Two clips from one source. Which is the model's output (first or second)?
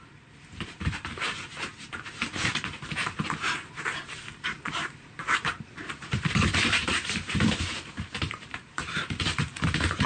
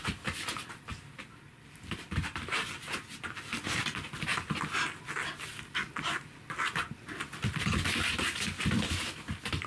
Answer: first